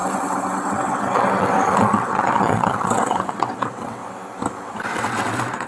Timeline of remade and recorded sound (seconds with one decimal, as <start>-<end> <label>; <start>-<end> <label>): 0.0-4.0 remade; 4.0-4.9 recorded; 4.9-5.7 remade